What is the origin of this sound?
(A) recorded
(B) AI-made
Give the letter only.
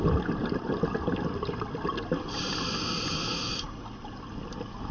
A